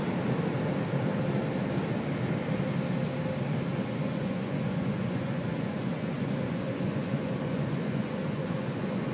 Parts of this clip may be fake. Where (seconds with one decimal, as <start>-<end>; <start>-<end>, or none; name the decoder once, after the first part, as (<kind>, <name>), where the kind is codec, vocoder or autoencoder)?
3.7-9.1 (vocoder, Vocos)